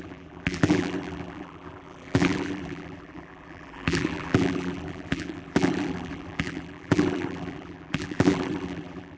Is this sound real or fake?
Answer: fake